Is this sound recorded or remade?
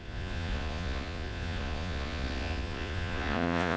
remade